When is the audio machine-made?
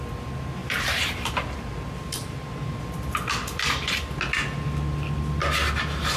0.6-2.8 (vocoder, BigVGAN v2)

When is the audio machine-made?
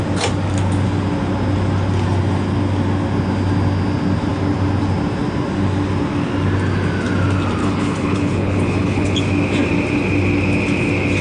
7.6-9.2 (codec, HILCodec)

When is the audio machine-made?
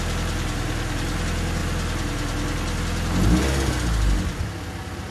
none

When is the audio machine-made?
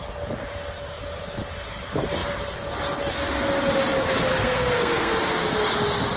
4.3-5.2 (codec, SNAC)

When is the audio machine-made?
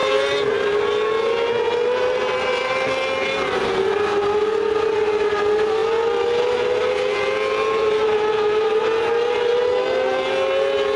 none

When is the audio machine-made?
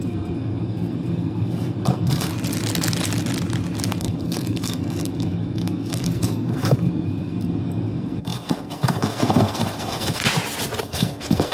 0.0-2.3 (codec, SNAC); 4.0-10.2; 10.8-11.5